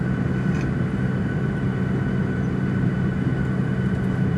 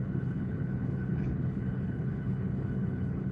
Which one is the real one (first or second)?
first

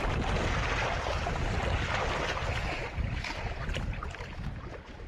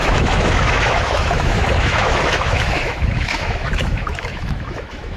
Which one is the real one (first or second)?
first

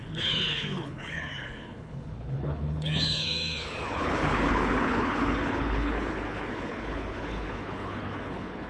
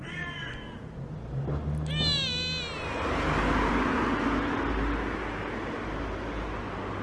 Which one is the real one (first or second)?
second